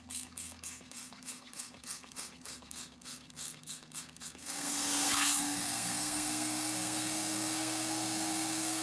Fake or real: fake